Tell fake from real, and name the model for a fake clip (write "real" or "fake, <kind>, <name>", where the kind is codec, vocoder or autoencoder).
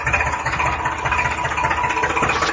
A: real